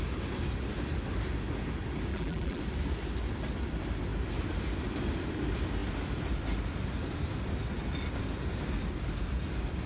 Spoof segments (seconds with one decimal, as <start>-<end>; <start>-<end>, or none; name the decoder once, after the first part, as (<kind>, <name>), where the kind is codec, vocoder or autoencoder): 2.1-2.6 (vocoder, BigVGAN v2)